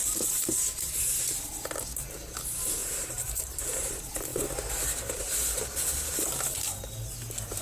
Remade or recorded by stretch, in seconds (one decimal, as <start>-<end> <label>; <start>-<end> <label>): 0.0-2.8 recorded; 2.8-3.9 remade; 3.9-7.6 recorded